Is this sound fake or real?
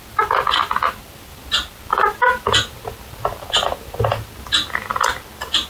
real